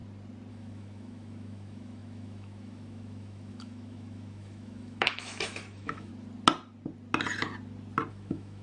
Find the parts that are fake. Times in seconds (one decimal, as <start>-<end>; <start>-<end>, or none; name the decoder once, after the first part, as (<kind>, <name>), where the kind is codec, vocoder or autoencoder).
0.5-6.1 (autoencoder, DAC-VAE); 8.1-8.6